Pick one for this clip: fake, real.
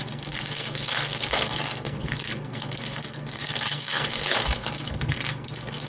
fake